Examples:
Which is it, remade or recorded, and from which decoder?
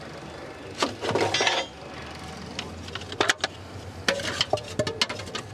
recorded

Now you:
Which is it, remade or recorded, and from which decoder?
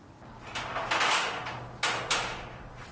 recorded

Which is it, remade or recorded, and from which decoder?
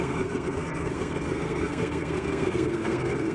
remade, codec, SNAC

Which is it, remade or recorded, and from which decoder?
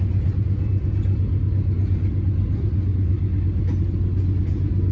recorded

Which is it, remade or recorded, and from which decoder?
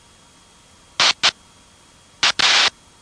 recorded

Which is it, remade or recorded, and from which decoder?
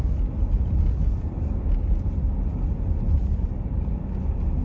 recorded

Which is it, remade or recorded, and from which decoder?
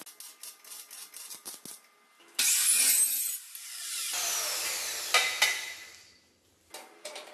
recorded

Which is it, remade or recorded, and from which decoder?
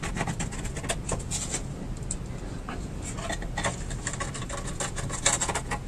recorded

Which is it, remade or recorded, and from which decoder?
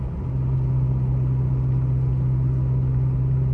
recorded